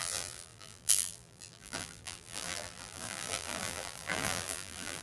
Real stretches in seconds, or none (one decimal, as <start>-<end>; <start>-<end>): none